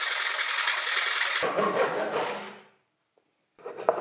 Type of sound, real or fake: real